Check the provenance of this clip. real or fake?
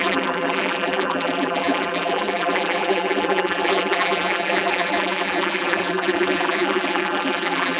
fake